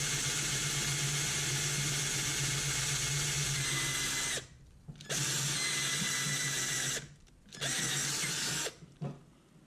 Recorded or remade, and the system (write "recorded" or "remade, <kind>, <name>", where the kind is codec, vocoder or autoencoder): recorded